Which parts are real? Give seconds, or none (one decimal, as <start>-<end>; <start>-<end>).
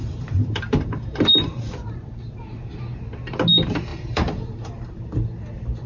1.9-3.9; 5.0-5.9